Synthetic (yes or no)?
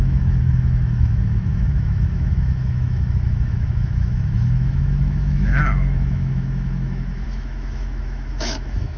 yes